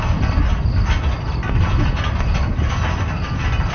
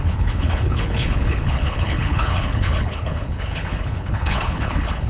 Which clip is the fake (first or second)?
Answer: second